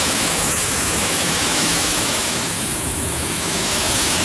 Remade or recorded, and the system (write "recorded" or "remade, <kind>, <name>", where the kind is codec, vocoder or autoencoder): remade, autoencoder, DAC-VAE